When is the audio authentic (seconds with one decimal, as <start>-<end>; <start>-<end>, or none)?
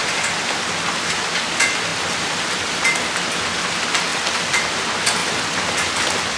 0.7-1.9; 2.8-4.1; 4.7-6.4